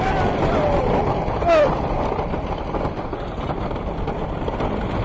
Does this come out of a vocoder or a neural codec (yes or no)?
no